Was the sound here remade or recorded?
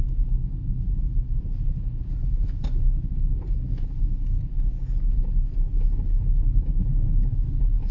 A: recorded